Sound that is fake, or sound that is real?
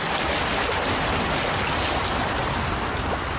real